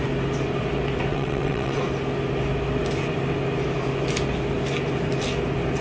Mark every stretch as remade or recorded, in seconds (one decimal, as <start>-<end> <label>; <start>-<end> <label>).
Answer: 0.0-1.1 recorded; 1.1-1.8 remade; 1.8-5.8 recorded